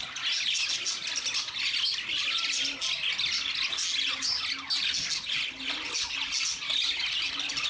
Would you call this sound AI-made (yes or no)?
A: no